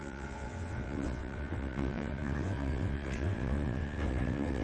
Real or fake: fake